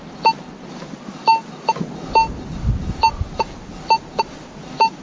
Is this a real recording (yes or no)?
yes